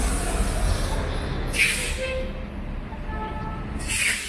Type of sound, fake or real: real